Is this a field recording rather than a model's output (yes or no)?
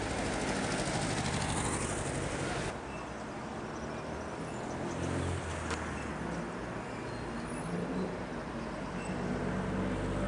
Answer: yes